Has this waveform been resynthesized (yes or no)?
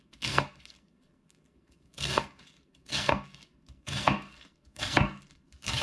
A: yes